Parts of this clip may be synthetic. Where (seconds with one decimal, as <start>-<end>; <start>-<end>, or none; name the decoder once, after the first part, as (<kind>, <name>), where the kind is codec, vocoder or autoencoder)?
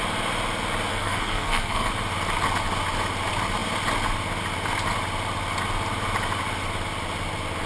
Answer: 0.9-1.9 (codec, SNAC)